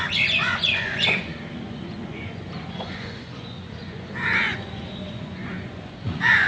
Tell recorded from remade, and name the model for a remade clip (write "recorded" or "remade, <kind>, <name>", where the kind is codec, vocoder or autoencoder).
remade, vocoder, Vocos